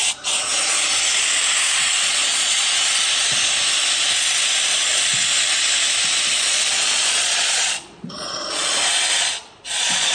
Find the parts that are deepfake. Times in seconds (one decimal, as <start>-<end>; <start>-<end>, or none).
2.0-2.6; 6.3-8.6; 9.4-10.1